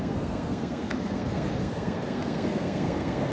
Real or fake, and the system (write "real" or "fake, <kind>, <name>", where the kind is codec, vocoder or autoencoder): fake, codec, SNAC